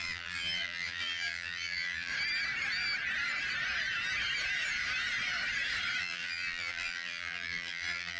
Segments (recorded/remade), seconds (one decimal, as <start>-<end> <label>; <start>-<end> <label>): 0.0-2.1 remade; 2.1-6.0 recorded; 6.0-8.2 remade